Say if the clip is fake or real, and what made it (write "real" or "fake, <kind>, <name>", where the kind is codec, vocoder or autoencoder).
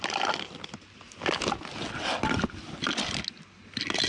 real